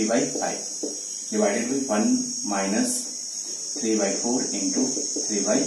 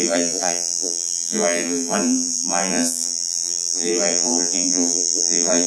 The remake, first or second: second